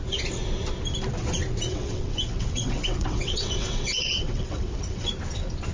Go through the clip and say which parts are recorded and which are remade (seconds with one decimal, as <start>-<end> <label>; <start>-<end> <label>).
0.0-1.7 recorded; 1.7-5.1 remade; 5.1-5.7 recorded